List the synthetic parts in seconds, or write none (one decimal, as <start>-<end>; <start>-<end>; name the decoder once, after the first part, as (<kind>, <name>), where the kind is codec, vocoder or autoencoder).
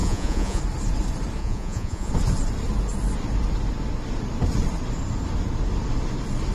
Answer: 0.0-0.6 (vocoder, Vocos); 1.4-2.1